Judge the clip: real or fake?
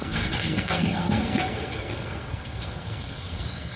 fake